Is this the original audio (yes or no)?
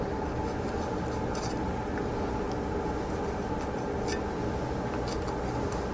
yes